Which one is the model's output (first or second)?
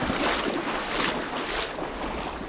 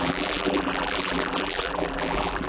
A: second